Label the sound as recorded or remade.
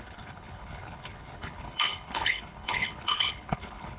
remade